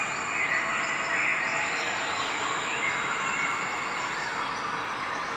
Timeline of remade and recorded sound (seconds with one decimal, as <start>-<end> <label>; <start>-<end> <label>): 0.0-1.3 recorded; 1.3-4.5 remade; 4.5-5.4 recorded